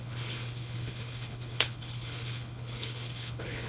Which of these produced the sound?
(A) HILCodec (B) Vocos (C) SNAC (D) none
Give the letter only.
A